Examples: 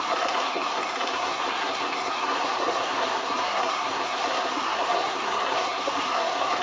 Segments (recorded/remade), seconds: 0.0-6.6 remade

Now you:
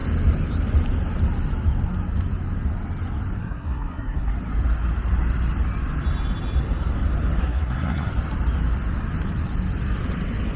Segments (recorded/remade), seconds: 0.0-3.4 recorded; 3.4-4.3 remade; 4.3-7.4 recorded; 7.4-8.1 remade; 8.1-10.6 recorded

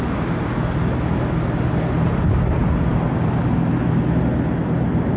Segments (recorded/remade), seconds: 0.0-5.2 recorded